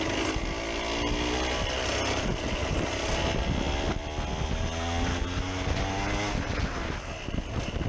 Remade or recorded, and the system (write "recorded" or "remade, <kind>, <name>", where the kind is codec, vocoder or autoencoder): recorded